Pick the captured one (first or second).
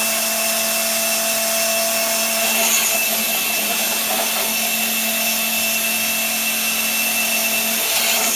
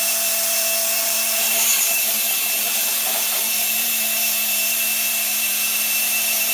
first